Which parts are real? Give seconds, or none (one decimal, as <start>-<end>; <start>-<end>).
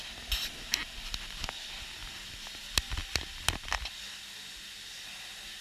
0.0-5.6